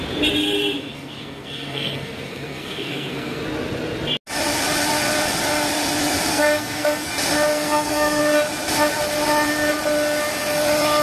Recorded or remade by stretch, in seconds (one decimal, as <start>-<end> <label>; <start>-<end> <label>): 0.0-0.8 recorded; 0.8-3.4 remade; 3.4-6.3 recorded; 6.3-7.1 remade; 7.1-7.5 recorded; 7.5-8.2 remade; 8.2-11.0 recorded